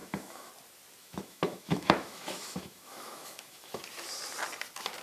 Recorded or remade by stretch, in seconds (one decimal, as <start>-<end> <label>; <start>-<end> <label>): 0.0-0.5 remade; 0.5-1.0 recorded; 1.0-3.8 remade; 3.8-5.0 recorded